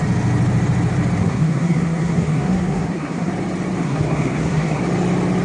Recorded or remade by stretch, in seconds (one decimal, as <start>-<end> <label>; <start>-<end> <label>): 0.0-1.2 recorded; 1.2-3.3 remade; 3.3-3.8 recorded; 3.8-4.8 remade; 4.8-5.4 recorded